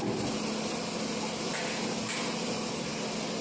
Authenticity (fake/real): real